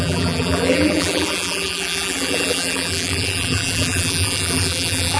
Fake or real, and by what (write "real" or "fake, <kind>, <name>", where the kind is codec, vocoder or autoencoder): fake, vocoder, BigVGAN v2